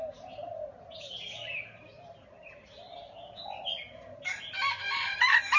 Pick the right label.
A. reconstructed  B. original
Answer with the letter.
B